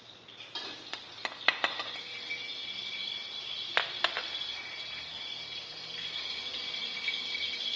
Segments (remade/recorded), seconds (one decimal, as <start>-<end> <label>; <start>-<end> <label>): 0.0-7.8 recorded